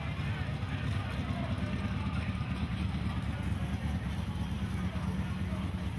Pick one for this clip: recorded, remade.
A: recorded